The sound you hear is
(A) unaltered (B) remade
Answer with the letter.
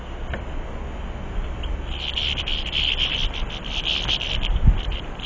A